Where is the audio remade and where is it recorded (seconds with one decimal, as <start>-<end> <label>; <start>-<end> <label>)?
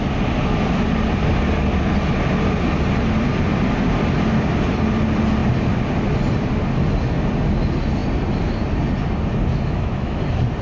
0.0-9.5 recorded; 9.5-10.2 remade; 10.2-10.6 recorded